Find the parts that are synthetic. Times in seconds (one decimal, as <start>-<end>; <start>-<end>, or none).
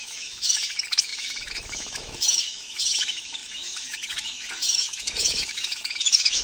0.0-6.4